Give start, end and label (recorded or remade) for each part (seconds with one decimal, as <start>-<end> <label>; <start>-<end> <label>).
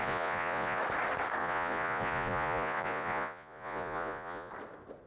0.0-0.8 remade; 0.8-1.4 recorded; 1.4-4.5 remade; 4.5-5.1 recorded